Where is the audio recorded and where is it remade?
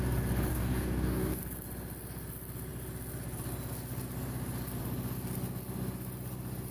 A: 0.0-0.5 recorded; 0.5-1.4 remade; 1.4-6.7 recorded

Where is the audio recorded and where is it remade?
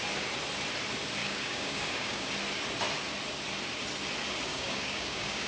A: 0.0-1.2 recorded; 1.2-2.3 remade; 2.3-4.5 recorded; 4.5-5.5 remade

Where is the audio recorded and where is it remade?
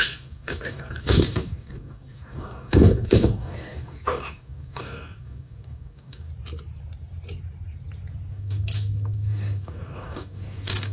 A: 0.0-6.3 remade; 6.3-8.3 recorded; 8.3-10.9 remade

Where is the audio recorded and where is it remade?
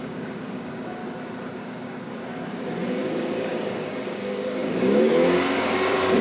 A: 0.0-1.0 remade; 1.0-1.5 recorded; 1.5-2.1 remade; 2.1-2.9 recorded; 2.9-6.2 remade